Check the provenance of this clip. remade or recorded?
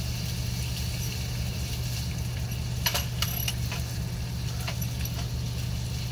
recorded